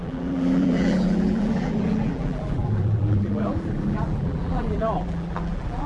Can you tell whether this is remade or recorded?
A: remade